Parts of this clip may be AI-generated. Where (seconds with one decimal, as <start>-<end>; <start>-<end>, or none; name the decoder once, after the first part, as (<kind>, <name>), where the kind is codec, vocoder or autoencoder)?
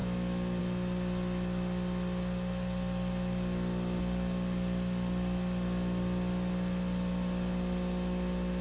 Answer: none